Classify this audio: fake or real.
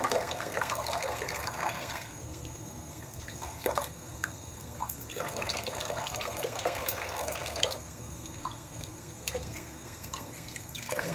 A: fake